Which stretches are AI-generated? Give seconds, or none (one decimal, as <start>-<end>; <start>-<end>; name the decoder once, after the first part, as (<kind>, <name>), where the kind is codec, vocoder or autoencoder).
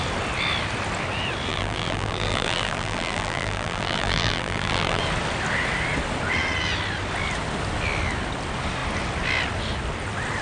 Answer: 1.5-5.0 (vocoder, BigVGAN v2)